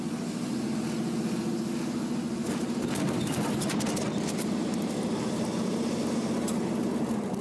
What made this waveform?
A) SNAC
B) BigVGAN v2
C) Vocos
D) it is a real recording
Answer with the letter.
D